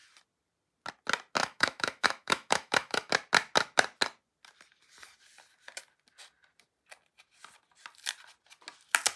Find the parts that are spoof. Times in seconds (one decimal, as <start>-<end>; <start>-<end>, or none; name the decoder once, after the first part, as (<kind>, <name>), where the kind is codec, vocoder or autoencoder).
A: 1.4-3.1 (autoencoder, DAC-VAE)